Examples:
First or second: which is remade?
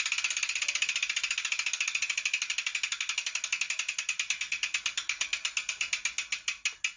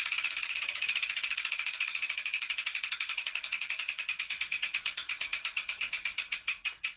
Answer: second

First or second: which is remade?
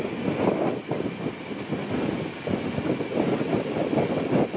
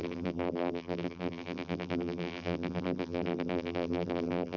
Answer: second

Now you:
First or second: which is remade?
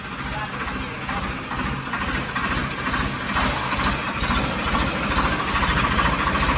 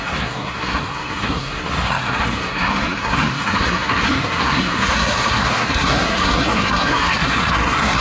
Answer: second